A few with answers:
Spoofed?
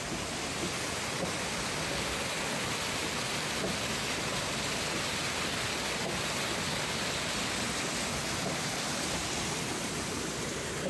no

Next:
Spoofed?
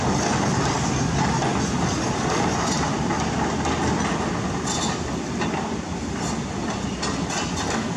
no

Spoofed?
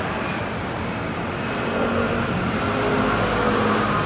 no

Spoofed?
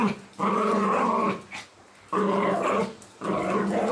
no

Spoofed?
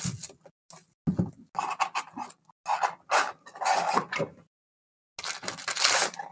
no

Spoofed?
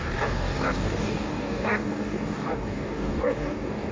yes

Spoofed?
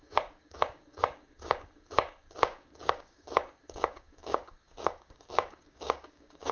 yes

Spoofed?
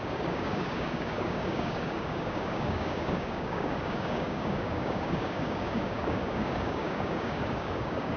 yes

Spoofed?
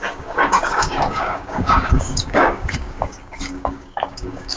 yes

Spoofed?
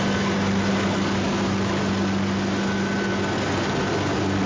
no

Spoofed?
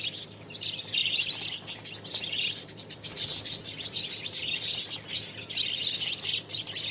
no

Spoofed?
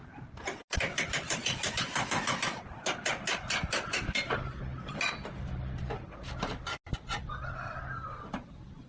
no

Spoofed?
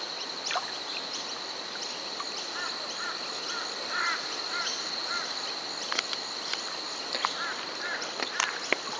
no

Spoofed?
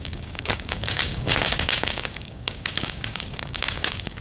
yes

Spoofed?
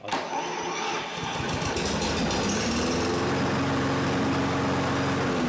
no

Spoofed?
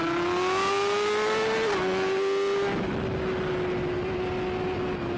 no